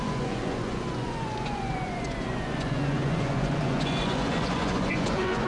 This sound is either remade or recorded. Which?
remade